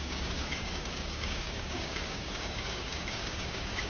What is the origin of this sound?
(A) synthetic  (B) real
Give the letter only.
A